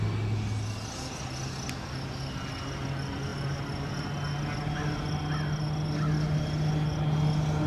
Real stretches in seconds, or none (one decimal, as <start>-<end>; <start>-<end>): 0.0-7.7